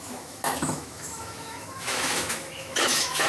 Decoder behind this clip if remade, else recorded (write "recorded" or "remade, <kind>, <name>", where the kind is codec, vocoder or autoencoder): remade, autoencoder, DAC-VAE